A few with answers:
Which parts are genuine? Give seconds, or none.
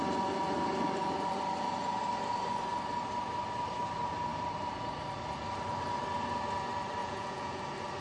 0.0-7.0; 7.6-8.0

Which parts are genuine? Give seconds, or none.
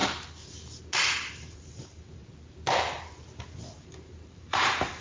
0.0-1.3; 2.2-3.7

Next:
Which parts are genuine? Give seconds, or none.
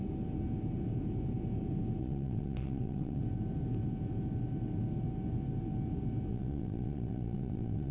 0.0-2.0; 3.2-6.3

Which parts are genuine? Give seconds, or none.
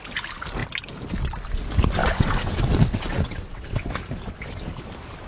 0.0-2.0; 3.9-5.3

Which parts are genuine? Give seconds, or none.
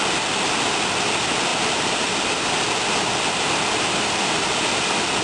0.0-5.2